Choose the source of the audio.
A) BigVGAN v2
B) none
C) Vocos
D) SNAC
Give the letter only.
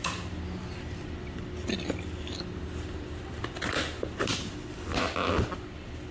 B